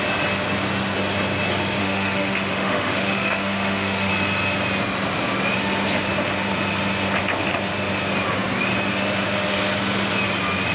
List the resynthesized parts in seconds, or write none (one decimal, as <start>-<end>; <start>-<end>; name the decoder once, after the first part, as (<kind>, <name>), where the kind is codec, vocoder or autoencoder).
1.8-4.1 (autoencoder, DAC-VAE)